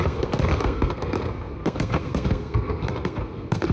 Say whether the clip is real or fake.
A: fake